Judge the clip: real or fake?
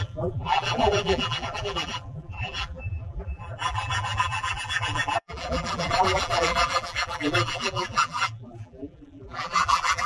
fake